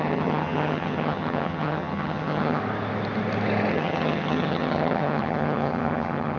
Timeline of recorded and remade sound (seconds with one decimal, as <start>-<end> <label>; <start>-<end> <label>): 0.0-2.6 remade; 2.6-3.7 recorded; 3.7-6.4 remade